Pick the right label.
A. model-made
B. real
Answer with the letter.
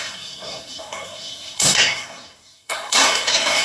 A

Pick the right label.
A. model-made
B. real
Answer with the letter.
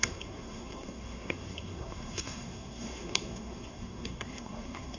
A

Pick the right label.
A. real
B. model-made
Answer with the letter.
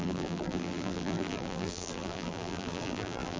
B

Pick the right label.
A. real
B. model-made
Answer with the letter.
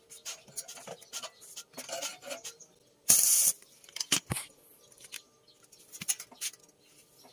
A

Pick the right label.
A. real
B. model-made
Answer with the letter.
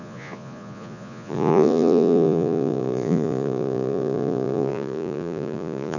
B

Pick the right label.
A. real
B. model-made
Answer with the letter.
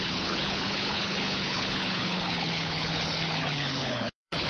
B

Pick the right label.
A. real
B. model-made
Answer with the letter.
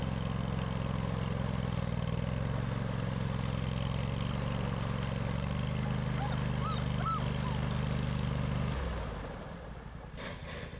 A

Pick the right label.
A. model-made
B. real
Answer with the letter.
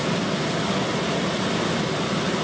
B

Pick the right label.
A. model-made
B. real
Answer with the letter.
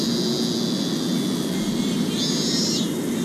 B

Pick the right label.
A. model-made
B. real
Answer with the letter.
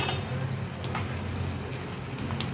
B